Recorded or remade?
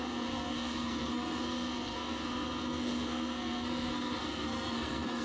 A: remade